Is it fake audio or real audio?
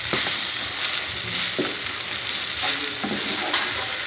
real